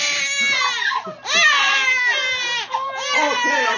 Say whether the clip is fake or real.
real